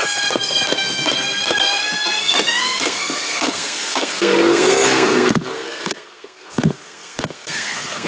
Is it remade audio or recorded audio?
remade